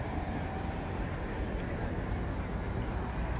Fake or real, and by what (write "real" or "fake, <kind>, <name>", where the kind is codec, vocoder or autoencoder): fake, vocoder, BigVGAN v2